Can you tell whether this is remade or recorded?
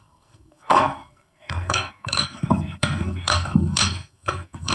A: remade